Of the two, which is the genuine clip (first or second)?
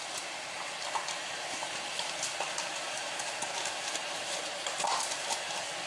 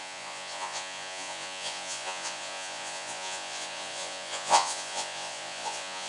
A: first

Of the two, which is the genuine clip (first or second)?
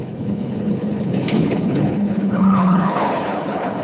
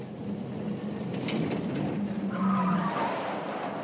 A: second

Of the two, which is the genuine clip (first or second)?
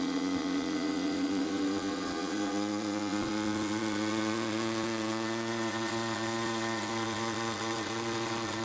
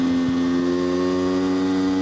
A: second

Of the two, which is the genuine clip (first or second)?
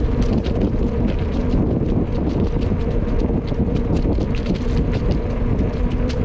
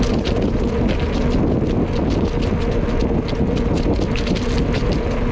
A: second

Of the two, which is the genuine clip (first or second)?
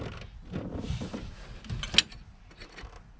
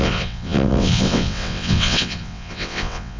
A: first